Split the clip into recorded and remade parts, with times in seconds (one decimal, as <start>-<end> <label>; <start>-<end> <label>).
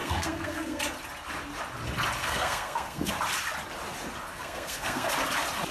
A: 0.0-0.8 remade; 0.8-2.2 recorded; 2.2-3.1 remade; 3.1-4.3 recorded; 4.3-5.1 remade; 5.1-5.7 recorded